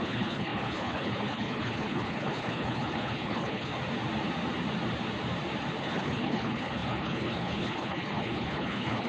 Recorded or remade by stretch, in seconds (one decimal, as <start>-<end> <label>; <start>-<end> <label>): 0.0-3.7 remade; 3.7-5.8 recorded; 5.8-9.1 remade